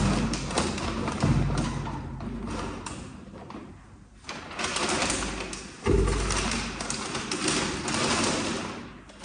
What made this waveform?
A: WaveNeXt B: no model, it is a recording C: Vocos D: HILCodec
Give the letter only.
B